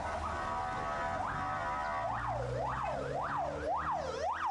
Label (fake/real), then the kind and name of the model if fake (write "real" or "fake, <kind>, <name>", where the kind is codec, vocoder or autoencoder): real